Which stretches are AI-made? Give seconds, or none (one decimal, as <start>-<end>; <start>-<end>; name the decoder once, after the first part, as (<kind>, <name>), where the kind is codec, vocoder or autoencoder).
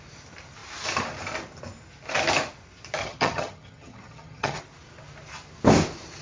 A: 3.0-4.6 (vocoder, HiFi-GAN)